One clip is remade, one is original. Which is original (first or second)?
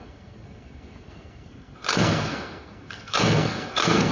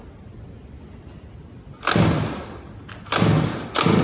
second